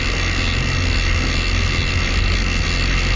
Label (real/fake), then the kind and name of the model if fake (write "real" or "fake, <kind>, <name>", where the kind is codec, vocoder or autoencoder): real